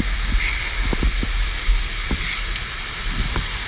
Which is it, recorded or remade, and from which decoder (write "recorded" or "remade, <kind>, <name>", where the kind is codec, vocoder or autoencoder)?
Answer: recorded